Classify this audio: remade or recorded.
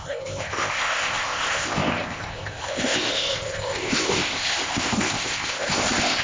remade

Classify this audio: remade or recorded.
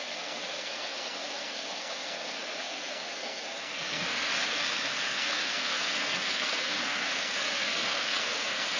remade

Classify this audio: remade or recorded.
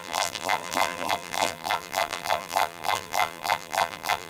remade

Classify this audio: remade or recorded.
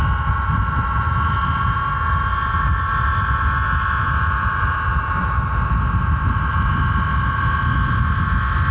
recorded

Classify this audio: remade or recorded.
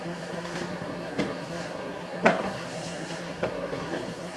remade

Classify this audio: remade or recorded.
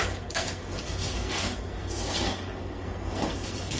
remade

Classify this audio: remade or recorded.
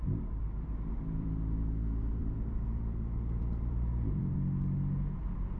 remade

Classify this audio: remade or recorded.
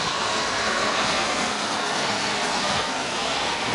remade